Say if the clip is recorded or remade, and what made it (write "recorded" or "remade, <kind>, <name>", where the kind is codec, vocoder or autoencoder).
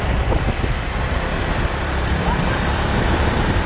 remade, vocoder, BigVGAN v2